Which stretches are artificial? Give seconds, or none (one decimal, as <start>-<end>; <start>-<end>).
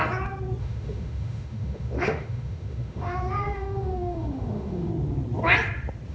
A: 0.6-4.9